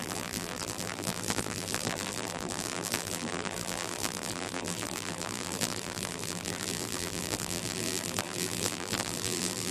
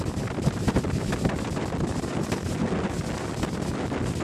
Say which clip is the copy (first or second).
first